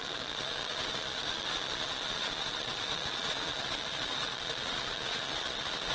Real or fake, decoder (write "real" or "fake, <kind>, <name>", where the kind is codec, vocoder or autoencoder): fake, vocoder, Vocos